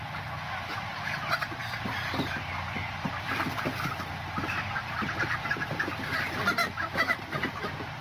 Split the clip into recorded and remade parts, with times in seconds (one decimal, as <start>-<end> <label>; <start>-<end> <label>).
0.0-6.6 recorded; 6.6-7.2 remade; 7.2-8.0 recorded